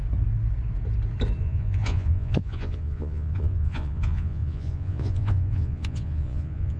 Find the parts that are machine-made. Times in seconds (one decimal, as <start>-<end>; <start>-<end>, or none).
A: 1.4-6.8